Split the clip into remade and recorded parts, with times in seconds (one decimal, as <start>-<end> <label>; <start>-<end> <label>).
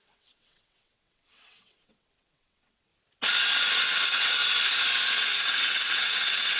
0.0-2.9 remade; 2.9-3.7 recorded; 3.7-4.4 remade; 4.4-5.1 recorded; 5.1-6.6 remade